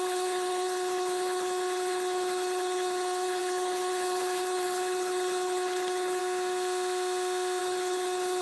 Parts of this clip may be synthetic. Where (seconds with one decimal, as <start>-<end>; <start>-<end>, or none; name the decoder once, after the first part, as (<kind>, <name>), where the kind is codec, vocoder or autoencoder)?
0.0-6.2 (codec, HILCodec); 7.6-8.4